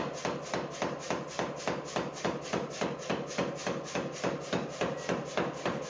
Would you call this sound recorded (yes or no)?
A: yes